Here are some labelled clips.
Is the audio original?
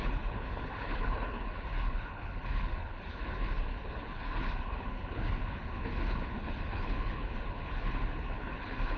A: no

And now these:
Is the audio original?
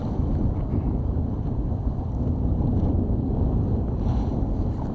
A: yes